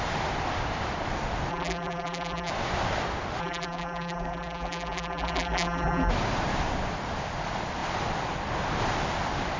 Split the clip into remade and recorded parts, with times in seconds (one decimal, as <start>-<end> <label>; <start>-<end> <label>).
0.0-1.5 recorded; 1.5-2.5 remade; 2.5-3.4 recorded; 3.4-6.1 remade; 6.1-9.6 recorded